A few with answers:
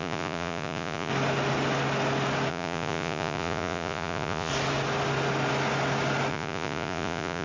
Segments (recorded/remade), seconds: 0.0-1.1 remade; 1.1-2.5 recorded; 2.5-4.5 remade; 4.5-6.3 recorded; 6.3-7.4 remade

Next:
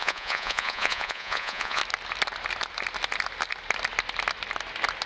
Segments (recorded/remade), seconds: 0.0-1.8 remade; 1.8-5.1 recorded

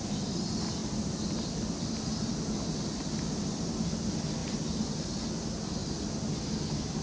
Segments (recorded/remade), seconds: 0.0-0.8 recorded; 0.8-2.3 remade; 2.3-4.4 recorded; 4.4-5.2 remade; 5.2-5.8 recorded; 5.8-6.6 remade; 6.6-7.0 recorded

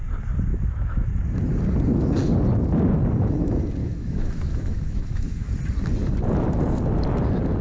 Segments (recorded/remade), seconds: 0.0-0.5 recorded; 0.5-1.1 remade; 1.1-3.8 recorded; 3.8-5.5 remade; 5.5-7.6 recorded

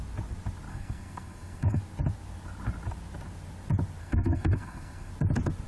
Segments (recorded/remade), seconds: 0.0-0.7 recorded; 0.7-1.8 remade; 1.8-4.0 recorded; 4.0-5.1 remade; 5.1-5.7 recorded

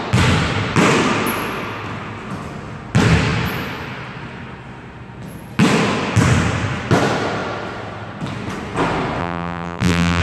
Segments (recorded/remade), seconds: 0.0-9.2 recorded; 9.2-10.2 remade